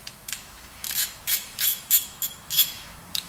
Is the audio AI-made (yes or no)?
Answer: yes